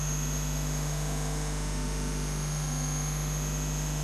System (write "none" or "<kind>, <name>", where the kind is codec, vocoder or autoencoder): autoencoder, DAC-VAE